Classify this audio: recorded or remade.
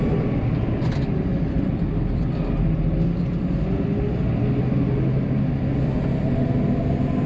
recorded